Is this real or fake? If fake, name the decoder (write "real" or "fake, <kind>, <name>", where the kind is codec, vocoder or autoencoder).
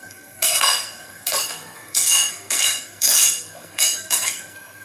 fake, codec, SNAC